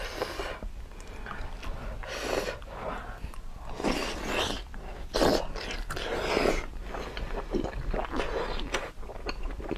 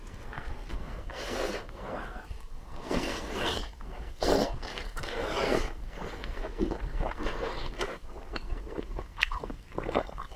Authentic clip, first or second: first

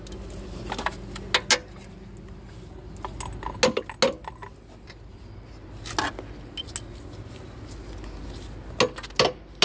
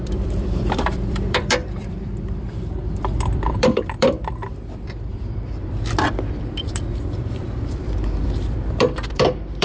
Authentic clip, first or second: first